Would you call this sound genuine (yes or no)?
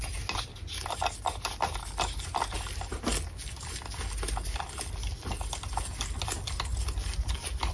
yes